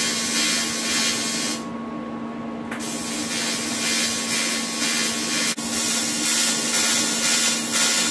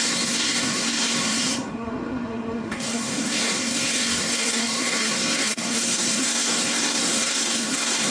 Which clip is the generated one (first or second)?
second